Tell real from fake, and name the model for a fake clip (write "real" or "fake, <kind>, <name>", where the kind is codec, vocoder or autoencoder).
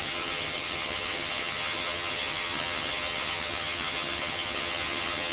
fake, vocoder, HiFi-GAN